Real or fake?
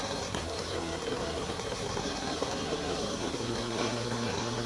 fake